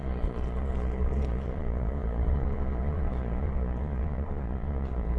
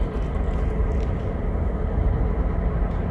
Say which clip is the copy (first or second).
first